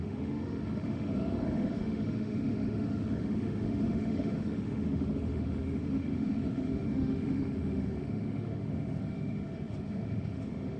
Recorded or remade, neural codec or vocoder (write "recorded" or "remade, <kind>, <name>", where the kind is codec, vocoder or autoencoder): remade, autoencoder, DAC-VAE